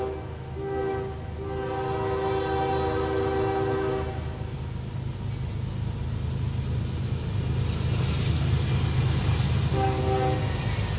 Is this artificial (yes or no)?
no